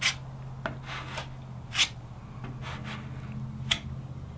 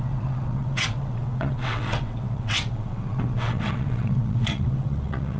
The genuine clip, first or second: first